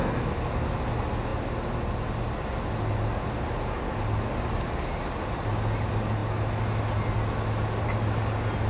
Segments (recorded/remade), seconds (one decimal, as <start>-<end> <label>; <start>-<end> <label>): 0.0-8.7 recorded